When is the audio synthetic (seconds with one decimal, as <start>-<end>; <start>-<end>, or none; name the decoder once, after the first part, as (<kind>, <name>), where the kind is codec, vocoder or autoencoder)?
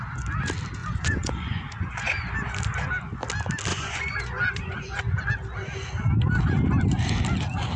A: 0.8-2.3 (vocoder, Vocos); 3.7-5.0